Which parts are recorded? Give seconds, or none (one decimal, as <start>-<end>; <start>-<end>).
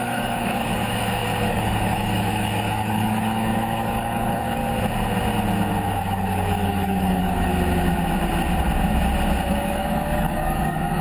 4.6-6.0; 7.5-9.5